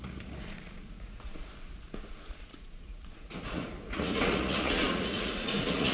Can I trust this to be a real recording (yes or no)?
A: no